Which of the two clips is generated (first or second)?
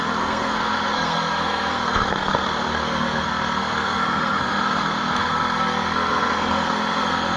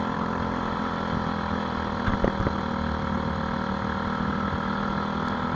first